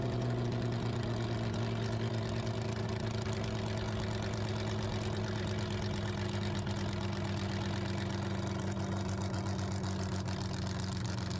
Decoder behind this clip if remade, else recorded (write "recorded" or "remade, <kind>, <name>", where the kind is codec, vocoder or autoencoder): recorded